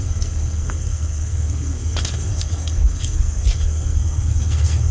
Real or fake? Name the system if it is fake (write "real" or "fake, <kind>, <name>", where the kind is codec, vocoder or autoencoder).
fake, codec, SNAC